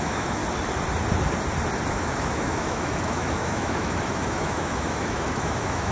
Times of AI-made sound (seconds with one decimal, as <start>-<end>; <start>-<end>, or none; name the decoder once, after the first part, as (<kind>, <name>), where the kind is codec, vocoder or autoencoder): 0.0-0.4 (autoencoder, DAC-VAE); 1.9-5.9